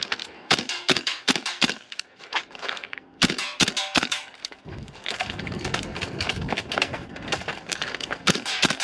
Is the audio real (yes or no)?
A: no